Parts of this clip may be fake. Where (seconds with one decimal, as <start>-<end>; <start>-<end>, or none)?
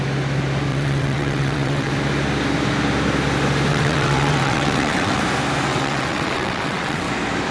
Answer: 0.7-1.9; 3.7-5.2; 5.7-7.1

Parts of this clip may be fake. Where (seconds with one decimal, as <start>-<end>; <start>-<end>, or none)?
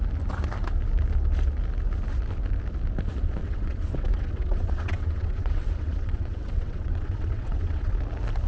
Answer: 3.4-8.0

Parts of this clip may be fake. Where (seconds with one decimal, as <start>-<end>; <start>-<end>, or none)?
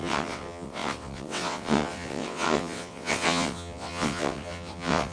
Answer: 0.0-5.1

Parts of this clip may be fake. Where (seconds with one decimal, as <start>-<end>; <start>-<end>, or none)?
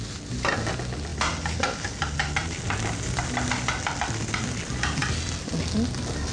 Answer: none